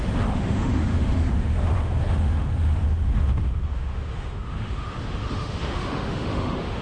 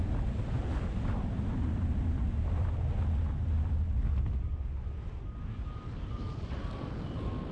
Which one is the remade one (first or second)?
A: first